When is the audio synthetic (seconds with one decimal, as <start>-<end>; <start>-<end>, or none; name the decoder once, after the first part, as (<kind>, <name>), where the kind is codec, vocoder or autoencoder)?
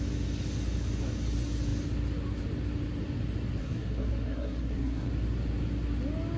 3.6-5.1 (codec, SNAC)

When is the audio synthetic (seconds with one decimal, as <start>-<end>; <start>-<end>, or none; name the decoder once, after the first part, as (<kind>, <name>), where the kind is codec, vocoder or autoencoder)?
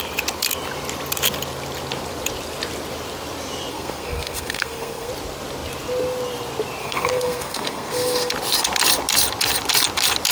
3.7-5.1 (codec, SNAC); 6.8-8.3